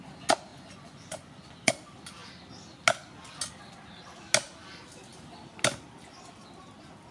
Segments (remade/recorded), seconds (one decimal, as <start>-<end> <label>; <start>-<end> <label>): 0.0-0.5 recorded; 0.5-1.7 remade; 1.7-7.1 recorded